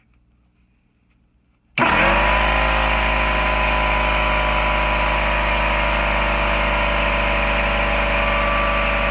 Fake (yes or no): no